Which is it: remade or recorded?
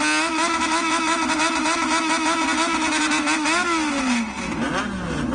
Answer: recorded